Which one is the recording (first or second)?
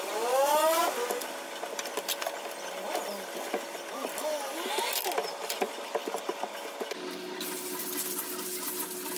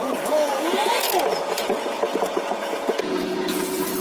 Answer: first